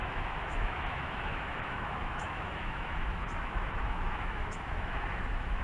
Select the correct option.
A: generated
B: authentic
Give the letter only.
A